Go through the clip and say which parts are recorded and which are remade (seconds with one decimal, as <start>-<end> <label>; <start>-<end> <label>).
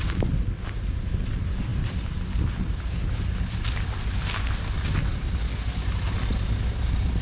0.0-7.2 recorded